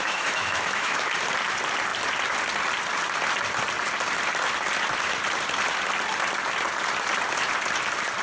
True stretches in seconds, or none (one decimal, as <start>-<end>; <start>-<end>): 1.1-8.2